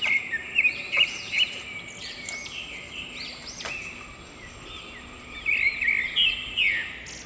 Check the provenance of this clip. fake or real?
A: real